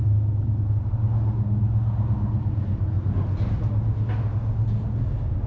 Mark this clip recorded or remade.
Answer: recorded